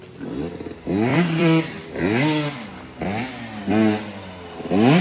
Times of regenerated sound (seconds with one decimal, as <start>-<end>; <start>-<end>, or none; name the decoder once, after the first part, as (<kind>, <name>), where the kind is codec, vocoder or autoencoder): 1.1-2.0 (vocoder, BigVGAN v2)